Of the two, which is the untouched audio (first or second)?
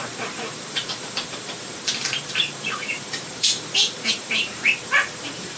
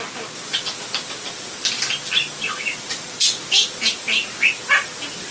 second